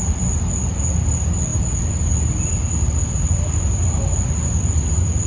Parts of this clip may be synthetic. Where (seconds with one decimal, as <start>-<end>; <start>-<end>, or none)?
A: none